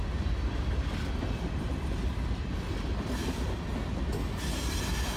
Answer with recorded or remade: recorded